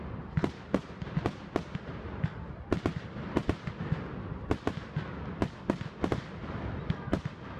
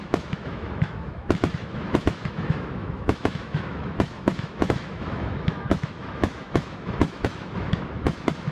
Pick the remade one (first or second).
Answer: second